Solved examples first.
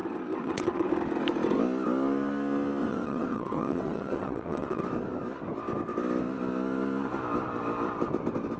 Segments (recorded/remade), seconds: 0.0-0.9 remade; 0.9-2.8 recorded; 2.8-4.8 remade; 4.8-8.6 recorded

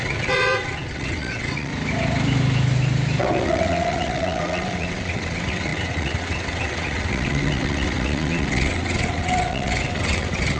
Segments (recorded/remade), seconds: 0.0-1.7 remade; 1.7-3.2 recorded; 3.2-10.6 remade

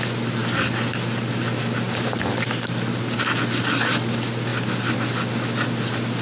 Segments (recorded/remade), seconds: 0.0-6.2 recorded

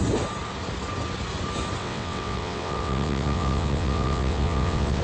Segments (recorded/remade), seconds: 0.0-1.8 recorded; 1.8-5.0 remade